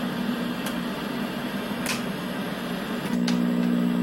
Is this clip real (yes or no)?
yes